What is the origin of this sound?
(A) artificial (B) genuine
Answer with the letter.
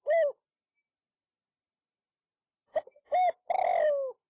B